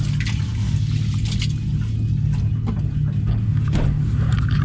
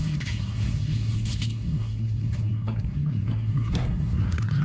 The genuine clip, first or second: first